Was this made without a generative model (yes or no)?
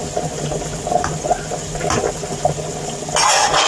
yes